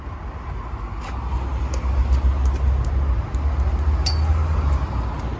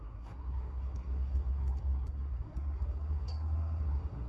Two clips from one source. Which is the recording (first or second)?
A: first